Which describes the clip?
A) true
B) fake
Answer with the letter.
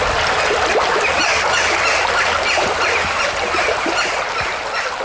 A